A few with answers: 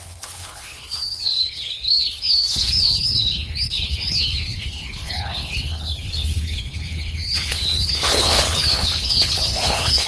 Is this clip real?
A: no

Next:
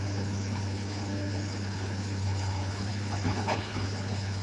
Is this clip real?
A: no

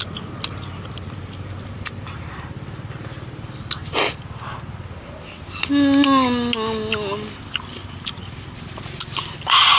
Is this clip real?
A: yes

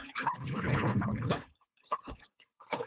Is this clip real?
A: no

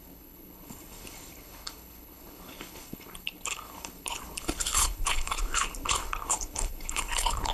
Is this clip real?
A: no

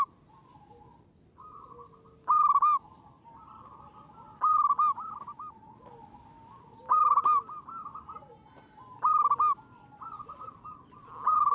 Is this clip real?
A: yes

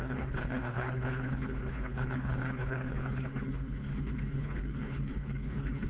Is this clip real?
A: no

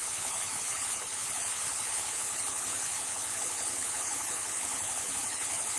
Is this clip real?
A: no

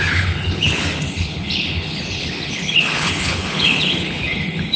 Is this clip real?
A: no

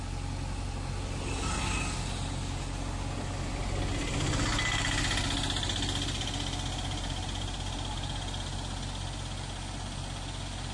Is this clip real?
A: yes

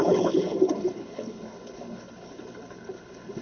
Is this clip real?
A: no